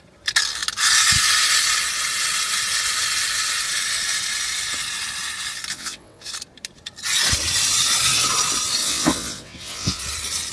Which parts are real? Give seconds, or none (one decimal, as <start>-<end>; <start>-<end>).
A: 0.0-5.7; 6.3-8.8; 10.0-10.5